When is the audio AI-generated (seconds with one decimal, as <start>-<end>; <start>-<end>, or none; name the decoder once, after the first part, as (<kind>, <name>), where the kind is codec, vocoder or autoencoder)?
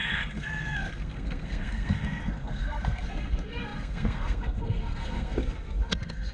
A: 0.0-6.3 (codec, SNAC)